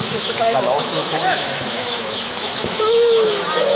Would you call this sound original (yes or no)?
no